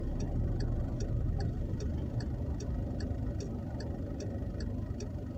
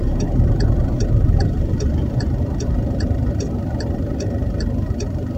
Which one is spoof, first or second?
second